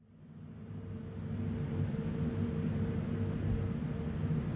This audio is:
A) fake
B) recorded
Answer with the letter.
B